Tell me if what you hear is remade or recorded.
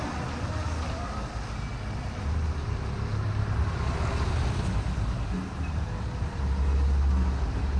recorded